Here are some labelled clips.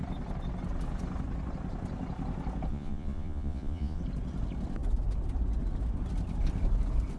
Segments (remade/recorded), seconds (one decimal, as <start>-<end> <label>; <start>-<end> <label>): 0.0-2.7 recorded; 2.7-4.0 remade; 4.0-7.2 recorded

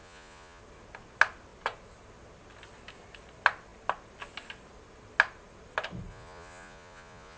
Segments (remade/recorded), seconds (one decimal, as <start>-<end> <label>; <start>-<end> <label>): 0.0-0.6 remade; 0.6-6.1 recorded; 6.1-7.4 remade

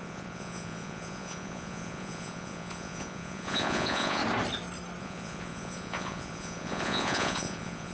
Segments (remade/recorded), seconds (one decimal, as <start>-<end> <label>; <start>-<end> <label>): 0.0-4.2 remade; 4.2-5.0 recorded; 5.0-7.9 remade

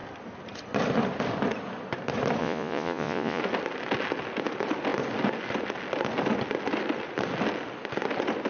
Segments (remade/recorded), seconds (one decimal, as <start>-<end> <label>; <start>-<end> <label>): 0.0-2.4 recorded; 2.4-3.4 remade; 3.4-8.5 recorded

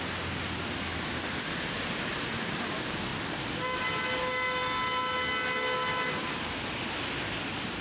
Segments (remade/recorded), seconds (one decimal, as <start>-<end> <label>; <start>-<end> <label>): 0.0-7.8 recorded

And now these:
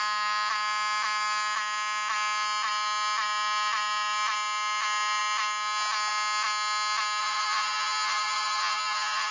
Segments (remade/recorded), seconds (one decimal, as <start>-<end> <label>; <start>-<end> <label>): 0.0-7.2 recorded; 7.2-9.3 remade